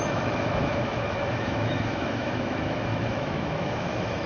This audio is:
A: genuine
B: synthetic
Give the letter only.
B